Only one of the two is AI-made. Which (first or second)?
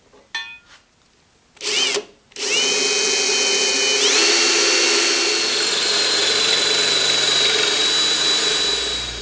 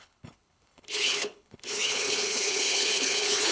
second